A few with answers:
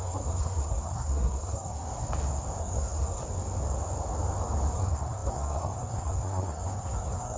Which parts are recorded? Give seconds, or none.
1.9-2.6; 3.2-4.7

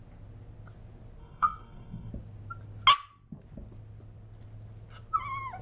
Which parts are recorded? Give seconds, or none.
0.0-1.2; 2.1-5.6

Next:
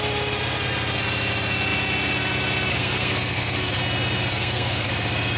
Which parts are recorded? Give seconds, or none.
0.0-2.7; 3.8-4.3; 4.9-5.4

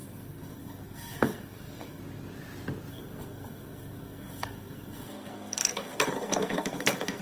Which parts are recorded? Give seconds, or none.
2.0-2.9